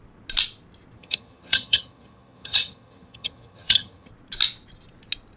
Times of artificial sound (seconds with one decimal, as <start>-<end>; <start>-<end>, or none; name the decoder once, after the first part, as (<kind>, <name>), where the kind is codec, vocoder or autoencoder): 1.0-4.1 (vocoder, HiFi-GAN)